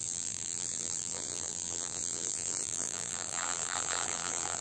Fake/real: fake